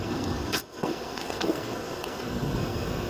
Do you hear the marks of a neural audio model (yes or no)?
yes